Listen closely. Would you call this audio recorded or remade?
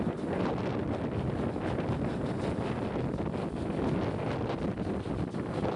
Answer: recorded